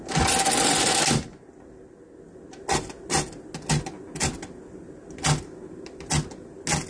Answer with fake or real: real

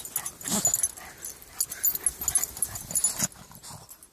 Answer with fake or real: real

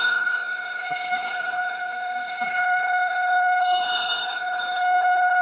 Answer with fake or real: fake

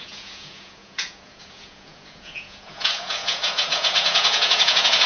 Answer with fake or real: fake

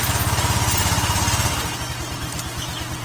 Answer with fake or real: real